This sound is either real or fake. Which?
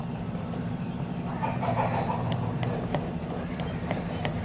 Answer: fake